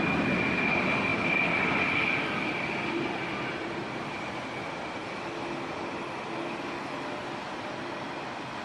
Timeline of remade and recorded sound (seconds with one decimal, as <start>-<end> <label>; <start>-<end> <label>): 0.0-1.1 recorded; 1.1-3.5 remade; 3.5-8.6 recorded